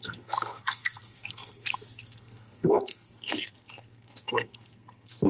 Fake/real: fake